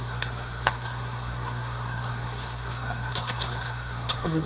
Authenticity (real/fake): fake